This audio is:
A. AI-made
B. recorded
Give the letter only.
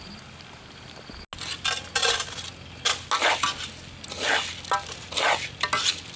B